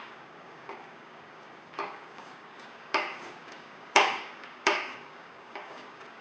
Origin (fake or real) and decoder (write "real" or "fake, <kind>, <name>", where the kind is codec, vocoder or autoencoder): fake, codec, DAC